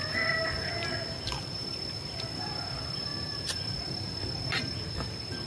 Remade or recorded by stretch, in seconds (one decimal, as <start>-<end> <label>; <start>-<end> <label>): 0.0-0.7 remade; 0.7-1.4 recorded; 1.4-5.5 remade